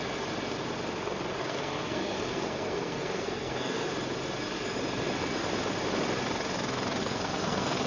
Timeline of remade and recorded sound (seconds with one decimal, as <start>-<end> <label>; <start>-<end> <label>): 0.0-1.4 recorded; 1.4-3.9 remade; 3.9-7.0 recorded; 7.0-7.9 remade